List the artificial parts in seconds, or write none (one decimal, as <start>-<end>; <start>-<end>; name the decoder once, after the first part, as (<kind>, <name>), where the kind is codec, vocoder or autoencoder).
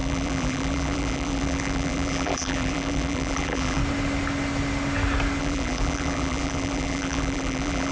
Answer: 0.0-3.8 (vocoder, BigVGAN v2); 5.4-7.9